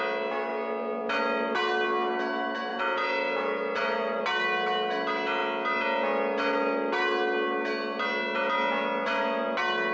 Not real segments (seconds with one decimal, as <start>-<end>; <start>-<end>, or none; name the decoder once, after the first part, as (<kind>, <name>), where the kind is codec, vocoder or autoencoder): 2.7-4.2 (vocoder, Vocos)